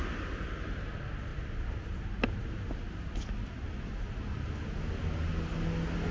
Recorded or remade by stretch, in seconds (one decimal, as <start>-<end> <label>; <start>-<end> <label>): 0.0-6.1 recorded